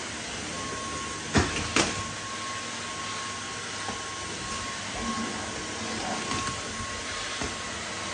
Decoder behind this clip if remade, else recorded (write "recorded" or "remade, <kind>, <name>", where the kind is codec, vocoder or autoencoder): recorded